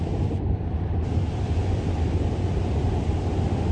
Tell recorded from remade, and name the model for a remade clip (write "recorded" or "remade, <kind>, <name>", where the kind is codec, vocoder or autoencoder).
recorded